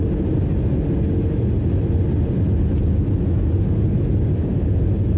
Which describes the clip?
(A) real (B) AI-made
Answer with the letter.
A